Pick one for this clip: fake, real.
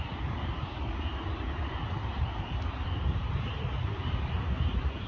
fake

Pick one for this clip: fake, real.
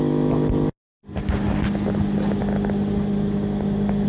real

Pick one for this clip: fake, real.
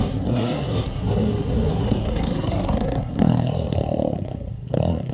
fake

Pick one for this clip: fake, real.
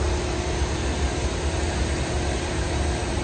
real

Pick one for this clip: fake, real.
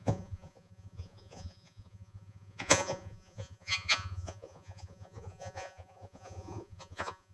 fake